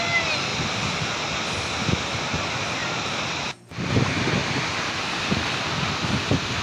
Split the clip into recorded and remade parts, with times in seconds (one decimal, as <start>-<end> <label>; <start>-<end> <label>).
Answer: 0.0-2.8 recorded; 2.8-3.9 remade; 3.9-4.4 recorded; 4.4-6.6 remade